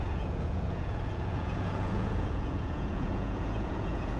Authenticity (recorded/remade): remade